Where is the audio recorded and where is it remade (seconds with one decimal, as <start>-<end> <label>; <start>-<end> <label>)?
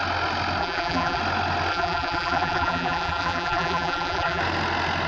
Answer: 0.0-0.6 recorded; 0.6-1.2 remade; 1.2-1.7 recorded; 1.7-4.4 remade; 4.4-5.1 recorded